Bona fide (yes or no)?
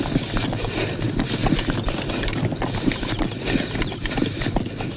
yes